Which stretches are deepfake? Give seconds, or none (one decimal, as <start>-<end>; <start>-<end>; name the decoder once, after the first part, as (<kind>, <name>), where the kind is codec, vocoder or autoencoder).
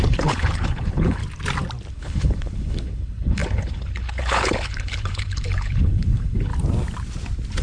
0.0-1.2 (codec, HILCodec); 1.9-6.5